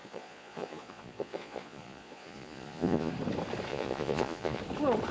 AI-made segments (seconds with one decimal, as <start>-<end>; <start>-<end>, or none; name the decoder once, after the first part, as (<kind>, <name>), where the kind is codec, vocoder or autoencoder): 0.0-3.1 (vocoder, Vocos); 3.7-4.6